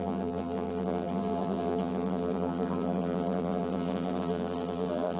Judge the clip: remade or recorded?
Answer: remade